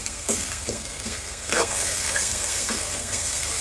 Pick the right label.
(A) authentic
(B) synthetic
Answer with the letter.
B